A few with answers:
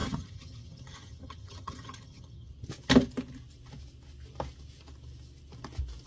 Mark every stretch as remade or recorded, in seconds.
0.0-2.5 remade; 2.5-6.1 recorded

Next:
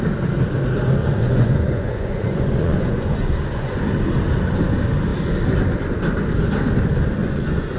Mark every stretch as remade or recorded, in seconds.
0.0-1.0 recorded; 1.0-3.8 remade; 3.8-7.2 recorded; 7.2-7.8 remade

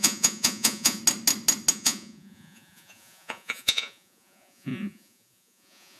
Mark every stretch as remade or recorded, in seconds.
0.0-1.0 remade; 1.0-1.7 recorded; 1.7-6.0 remade